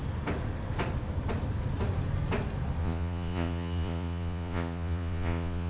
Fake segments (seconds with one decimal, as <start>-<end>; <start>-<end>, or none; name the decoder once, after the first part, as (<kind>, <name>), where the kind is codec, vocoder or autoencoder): 2.8-5.7 (vocoder, Vocos)